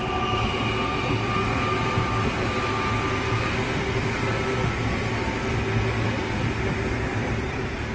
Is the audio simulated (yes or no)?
no